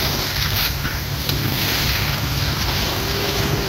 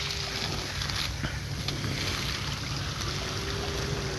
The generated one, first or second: first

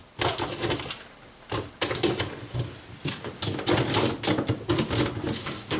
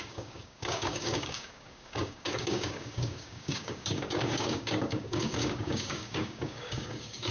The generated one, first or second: second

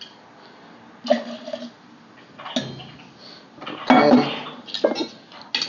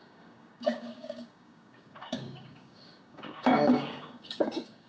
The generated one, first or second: second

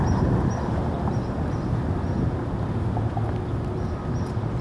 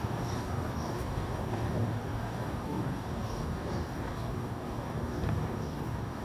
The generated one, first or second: second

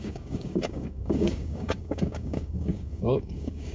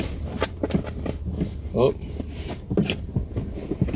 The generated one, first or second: first